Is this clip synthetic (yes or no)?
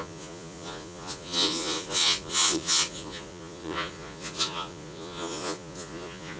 yes